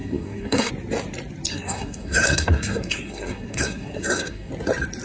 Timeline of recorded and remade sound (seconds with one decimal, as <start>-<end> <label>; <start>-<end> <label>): 0.0-0.7 remade; 0.7-1.5 recorded; 1.5-4.5 remade; 4.5-5.0 recorded